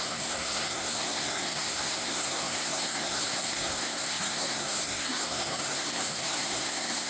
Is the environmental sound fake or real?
fake